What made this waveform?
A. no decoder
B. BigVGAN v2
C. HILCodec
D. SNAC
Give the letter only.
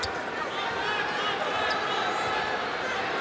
A